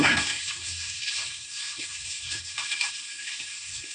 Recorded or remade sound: remade